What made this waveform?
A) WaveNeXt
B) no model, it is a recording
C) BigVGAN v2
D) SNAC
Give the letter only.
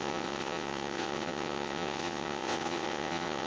A